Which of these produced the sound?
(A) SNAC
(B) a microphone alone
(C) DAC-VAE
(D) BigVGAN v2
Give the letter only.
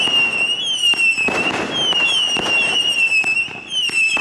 D